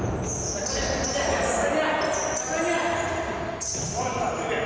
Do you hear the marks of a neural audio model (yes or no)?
no